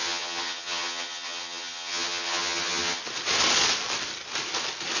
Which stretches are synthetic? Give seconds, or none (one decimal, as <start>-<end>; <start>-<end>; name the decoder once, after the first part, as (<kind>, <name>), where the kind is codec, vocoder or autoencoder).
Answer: 0.0-3.0 (vocoder, HiFi-GAN)